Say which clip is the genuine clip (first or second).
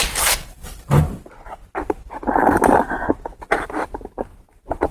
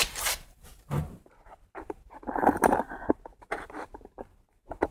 first